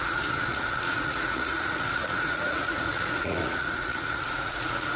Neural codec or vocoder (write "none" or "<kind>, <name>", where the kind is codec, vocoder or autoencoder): vocoder, Vocos